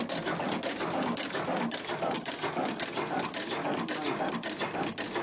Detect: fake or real real